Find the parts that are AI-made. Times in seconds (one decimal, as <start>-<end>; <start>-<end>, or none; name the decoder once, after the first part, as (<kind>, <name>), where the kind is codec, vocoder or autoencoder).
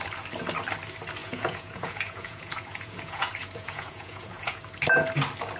1.2-4.6 (vocoder, Vocos)